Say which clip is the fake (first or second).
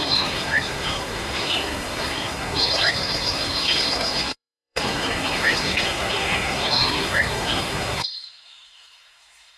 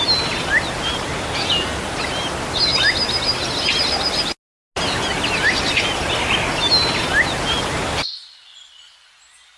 first